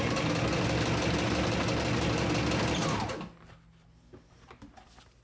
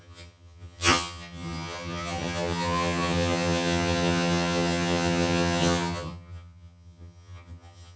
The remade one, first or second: second